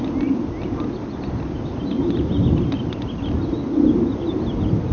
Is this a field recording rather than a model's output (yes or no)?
yes